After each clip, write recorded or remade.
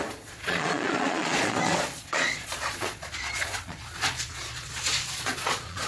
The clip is remade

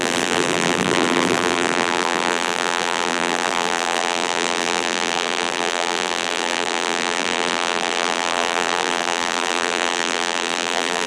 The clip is remade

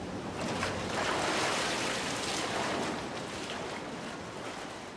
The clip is recorded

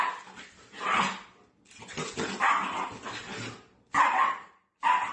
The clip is recorded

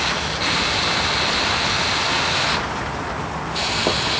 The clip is recorded